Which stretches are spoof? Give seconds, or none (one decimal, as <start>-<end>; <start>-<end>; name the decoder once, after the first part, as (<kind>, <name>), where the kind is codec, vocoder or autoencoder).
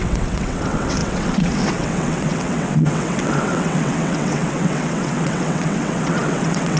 0.0-6.8 (vocoder, WaveNeXt)